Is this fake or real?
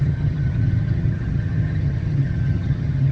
fake